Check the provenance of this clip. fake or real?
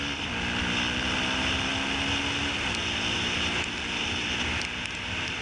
real